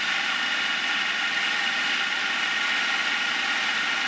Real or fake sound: real